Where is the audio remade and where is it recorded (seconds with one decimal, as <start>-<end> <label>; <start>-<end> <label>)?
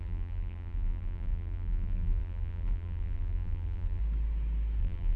0.0-4.0 remade; 4.0-4.8 recorded; 4.8-5.2 remade